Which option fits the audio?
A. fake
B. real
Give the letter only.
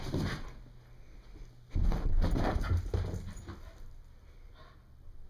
B